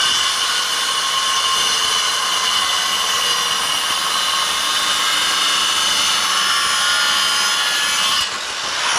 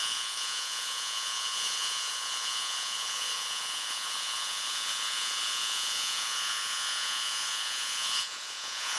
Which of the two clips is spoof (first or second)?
second